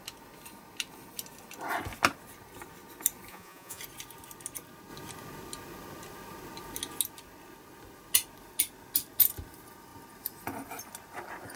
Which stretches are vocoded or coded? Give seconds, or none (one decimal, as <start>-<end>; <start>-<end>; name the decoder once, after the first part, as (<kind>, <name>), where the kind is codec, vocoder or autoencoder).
3.3-3.8 (vocoder, Vocos)